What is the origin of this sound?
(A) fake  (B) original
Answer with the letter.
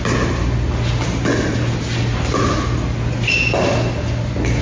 B